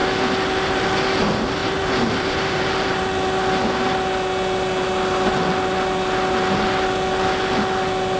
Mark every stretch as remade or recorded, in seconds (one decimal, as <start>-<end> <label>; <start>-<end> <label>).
0.0-1.6 recorded; 1.6-3.0 remade; 3.0-8.2 recorded